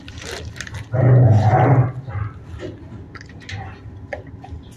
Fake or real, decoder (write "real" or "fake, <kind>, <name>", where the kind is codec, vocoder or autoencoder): real